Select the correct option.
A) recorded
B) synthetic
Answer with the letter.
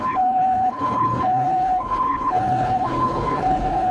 B